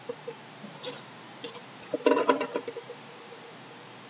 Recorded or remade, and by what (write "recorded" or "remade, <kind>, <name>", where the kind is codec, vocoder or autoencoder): remade, vocoder, BigVGAN v2